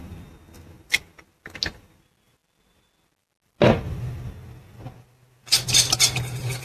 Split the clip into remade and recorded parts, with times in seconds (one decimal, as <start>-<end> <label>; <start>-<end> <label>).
0.0-6.6 recorded

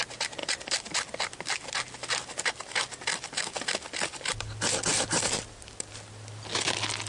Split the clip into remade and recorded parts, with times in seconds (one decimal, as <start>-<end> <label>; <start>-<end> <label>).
0.0-7.1 recorded

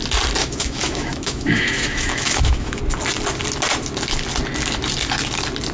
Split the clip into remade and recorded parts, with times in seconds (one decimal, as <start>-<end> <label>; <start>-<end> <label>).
0.0-0.4 recorded; 0.4-2.8 remade; 2.8-5.7 recorded

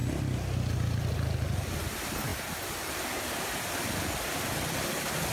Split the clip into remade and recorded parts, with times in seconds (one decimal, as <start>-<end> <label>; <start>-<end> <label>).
0.0-5.3 recorded